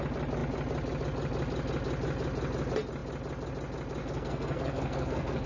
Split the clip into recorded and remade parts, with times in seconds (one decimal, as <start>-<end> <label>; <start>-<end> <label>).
0.0-4.0 recorded; 4.0-5.5 remade